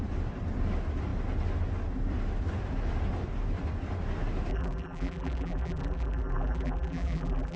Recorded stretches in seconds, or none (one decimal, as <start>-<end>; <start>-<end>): 0.0-4.5